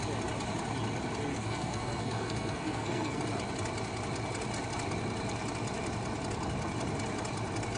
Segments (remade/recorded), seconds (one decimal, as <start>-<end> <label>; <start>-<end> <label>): 0.0-1.3 recorded; 1.3-3.2 remade; 3.2-7.8 recorded